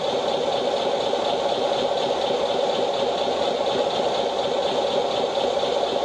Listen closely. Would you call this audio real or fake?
real